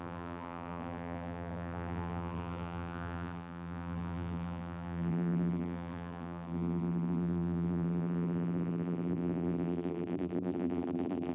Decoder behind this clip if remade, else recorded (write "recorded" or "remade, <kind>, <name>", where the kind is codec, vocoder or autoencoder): remade, vocoder, BigVGAN v2